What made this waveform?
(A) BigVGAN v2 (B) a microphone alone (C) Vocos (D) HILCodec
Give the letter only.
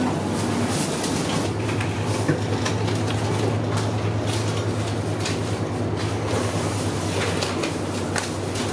B